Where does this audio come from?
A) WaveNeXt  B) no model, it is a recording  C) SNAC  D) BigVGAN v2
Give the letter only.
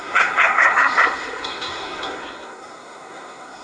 C